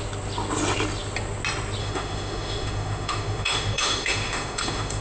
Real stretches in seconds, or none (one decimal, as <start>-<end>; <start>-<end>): 0.0-1.8